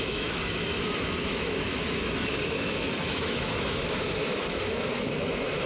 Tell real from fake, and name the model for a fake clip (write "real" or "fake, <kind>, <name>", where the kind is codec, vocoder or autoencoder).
fake, autoencoder, DAC-VAE